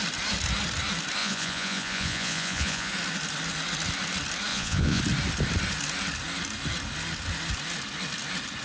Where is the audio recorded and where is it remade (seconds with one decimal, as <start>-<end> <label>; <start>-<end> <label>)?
0.0-1.2 recorded; 1.2-2.9 remade; 2.9-4.5 recorded; 4.5-5.0 remade; 5.0-8.6 recorded